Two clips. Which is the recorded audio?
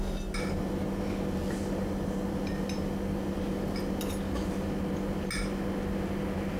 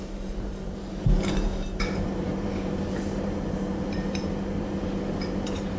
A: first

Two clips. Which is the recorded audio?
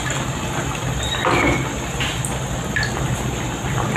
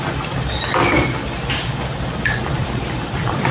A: first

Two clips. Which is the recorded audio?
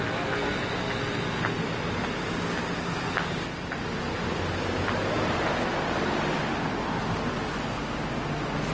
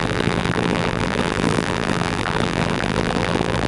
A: first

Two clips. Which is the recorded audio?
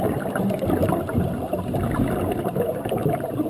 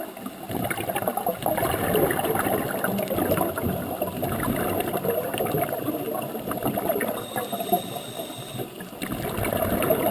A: second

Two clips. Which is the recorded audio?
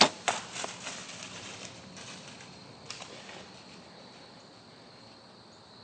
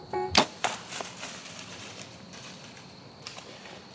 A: first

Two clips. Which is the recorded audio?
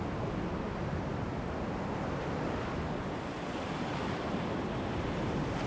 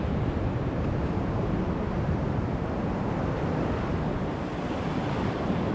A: first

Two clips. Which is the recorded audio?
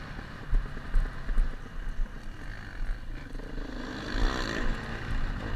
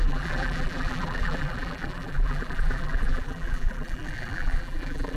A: first